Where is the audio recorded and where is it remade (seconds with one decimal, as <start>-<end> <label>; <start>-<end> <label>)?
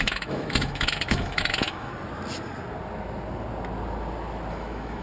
0.0-1.9 remade; 1.9-4.5 recorded; 4.5-5.0 remade